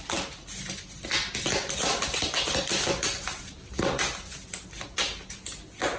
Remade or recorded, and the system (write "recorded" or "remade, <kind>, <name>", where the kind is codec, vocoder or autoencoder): recorded